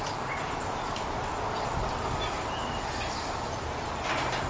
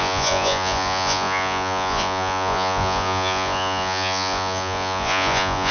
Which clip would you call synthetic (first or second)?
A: second